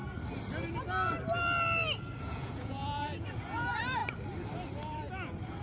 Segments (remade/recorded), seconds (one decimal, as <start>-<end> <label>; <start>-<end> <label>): 0.0-2.2 recorded; 2.2-4.0 remade; 4.0-5.6 recorded

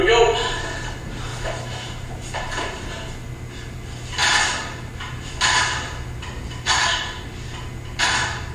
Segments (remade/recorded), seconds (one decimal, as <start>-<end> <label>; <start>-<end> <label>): 0.0-1.3 recorded; 1.3-1.9 remade; 1.9-8.5 recorded

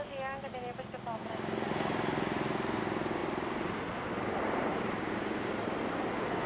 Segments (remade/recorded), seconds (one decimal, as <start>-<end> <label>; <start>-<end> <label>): 0.0-3.2 recorded; 3.2-4.0 remade; 4.0-4.7 recorded; 4.7-5.8 remade; 5.8-6.5 recorded

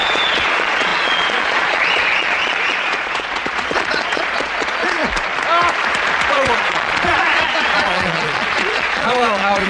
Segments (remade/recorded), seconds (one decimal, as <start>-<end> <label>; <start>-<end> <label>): 0.0-5.0 remade; 5.0-6.3 recorded; 6.3-9.7 remade

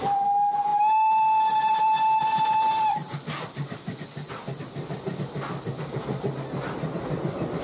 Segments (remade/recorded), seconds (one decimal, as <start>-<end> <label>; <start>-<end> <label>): 0.0-7.6 recorded

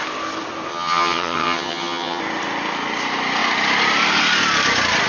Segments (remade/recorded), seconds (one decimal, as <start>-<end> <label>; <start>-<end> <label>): 0.0-0.7 recorded; 0.7-2.2 remade; 2.2-5.1 recorded

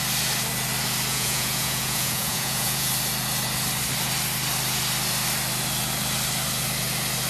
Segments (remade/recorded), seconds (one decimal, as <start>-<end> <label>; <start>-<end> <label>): 0.0-1.1 recorded; 1.1-2.9 remade; 2.9-7.3 recorded